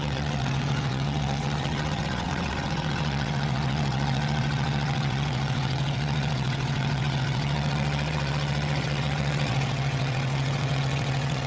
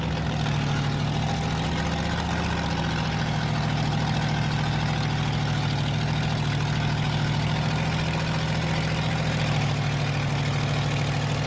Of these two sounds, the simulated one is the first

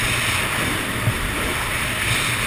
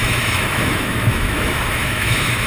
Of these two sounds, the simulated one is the second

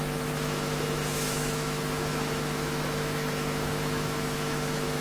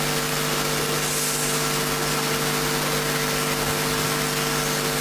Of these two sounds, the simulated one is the first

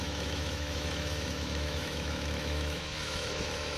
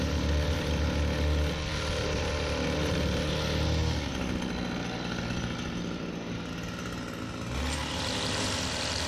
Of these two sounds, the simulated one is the first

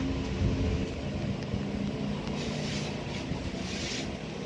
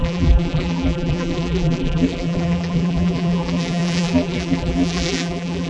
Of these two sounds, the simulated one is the second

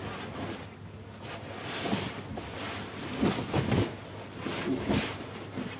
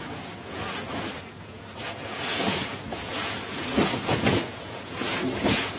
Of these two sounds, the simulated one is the second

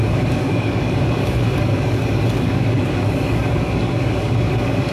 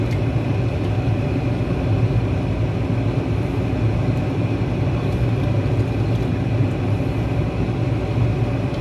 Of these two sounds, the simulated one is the first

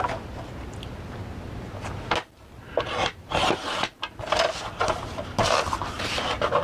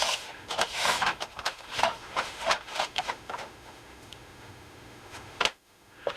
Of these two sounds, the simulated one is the second